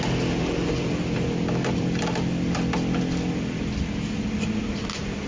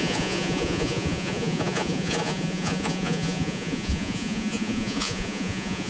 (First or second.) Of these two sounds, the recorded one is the first